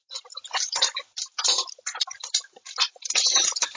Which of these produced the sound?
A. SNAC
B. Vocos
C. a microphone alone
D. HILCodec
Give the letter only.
C